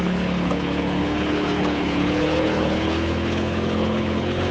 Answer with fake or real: fake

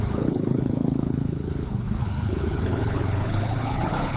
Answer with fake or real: fake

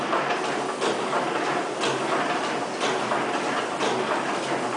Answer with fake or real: real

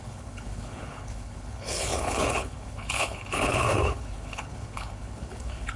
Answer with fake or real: fake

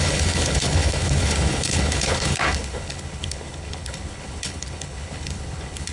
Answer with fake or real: fake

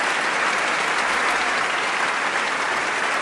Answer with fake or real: real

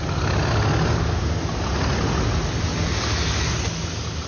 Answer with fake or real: real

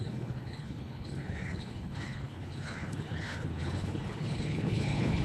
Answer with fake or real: fake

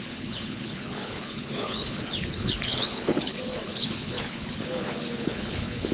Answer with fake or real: fake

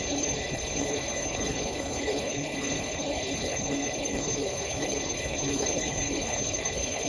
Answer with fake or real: fake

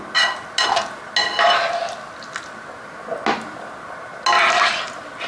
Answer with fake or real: real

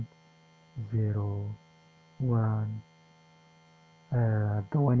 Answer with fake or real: real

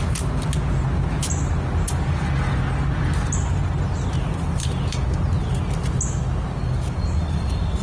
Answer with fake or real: real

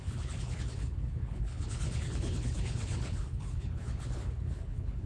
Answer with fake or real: fake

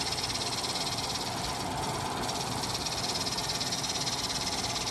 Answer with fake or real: real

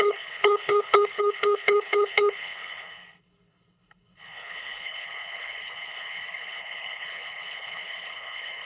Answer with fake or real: fake